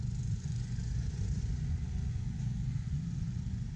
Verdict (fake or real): fake